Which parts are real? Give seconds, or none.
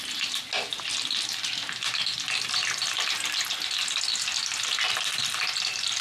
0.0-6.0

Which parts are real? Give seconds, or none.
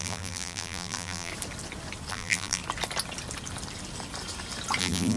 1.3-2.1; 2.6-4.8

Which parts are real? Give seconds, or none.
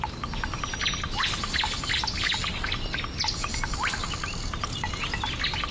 0.0-5.7